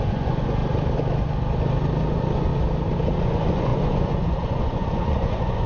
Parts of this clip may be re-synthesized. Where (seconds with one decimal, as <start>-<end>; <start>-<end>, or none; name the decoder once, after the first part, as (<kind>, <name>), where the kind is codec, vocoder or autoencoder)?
0.0-0.6 (vocoder, Vocos); 2.1-2.5; 3.2-5.7